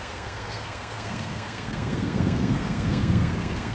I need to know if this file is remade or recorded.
remade